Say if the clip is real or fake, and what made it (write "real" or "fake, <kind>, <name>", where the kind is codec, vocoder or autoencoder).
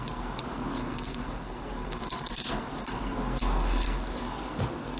fake, codec, SNAC